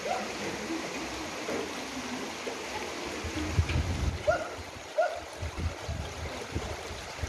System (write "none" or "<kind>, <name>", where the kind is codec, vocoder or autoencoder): none